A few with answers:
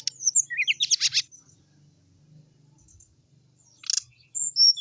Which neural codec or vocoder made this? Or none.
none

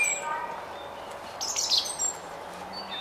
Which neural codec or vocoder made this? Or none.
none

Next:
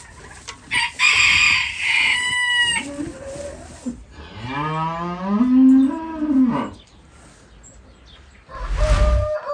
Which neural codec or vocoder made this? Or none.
none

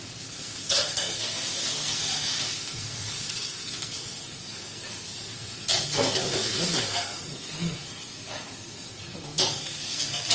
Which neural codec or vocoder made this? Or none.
codec, SNAC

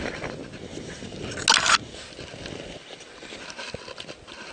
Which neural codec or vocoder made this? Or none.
none